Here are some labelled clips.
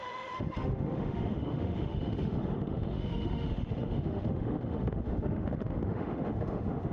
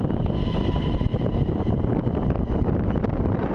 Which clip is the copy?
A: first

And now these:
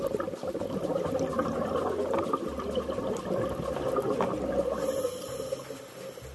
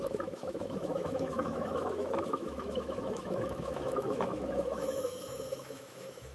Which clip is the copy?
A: second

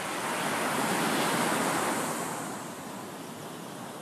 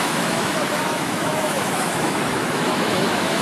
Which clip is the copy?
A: second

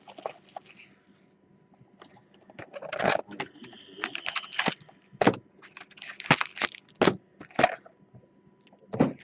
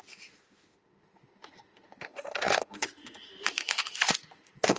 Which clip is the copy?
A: second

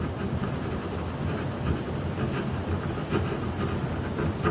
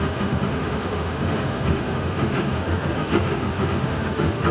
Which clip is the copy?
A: second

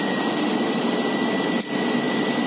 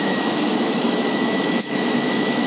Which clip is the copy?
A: second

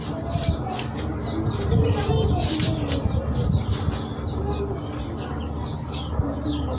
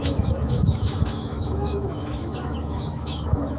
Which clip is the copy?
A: second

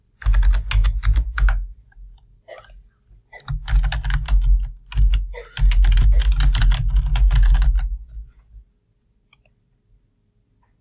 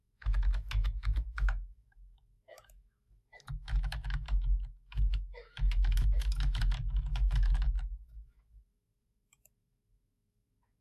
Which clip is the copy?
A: second